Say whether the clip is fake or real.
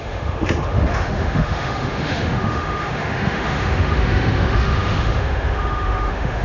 fake